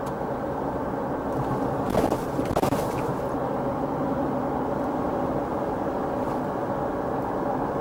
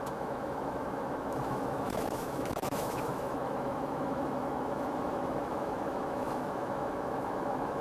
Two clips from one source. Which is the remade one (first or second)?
second